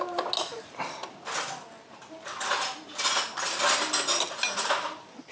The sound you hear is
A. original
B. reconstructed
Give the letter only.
A